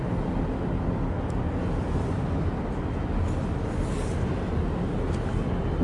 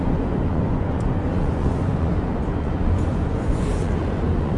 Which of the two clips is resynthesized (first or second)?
second